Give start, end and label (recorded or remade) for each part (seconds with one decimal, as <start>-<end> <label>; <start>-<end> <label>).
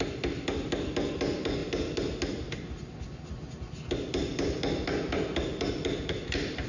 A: 0.0-6.7 recorded